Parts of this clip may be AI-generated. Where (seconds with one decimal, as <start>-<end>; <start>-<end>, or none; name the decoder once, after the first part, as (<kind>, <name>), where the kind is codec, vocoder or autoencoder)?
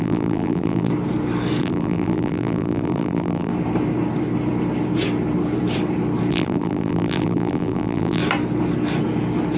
0.0-0.9 (vocoder, BigVGAN v2); 1.6-3.5; 6.3-8.2